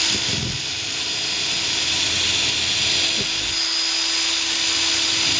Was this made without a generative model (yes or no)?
yes